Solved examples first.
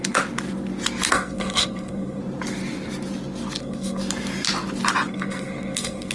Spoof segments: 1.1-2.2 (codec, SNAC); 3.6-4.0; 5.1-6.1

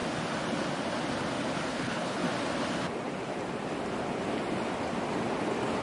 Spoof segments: 1.7-2.2 (codec, HILCodec)

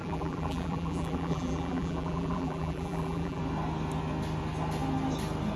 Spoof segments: 0.0-3.4 (vocoder, BigVGAN v2)

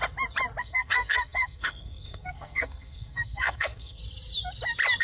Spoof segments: 0.6-4.0 (codec, SNAC)

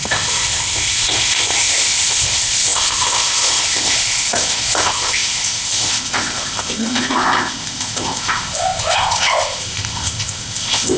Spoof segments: 0.0-11.0 (codec, ZipCodec)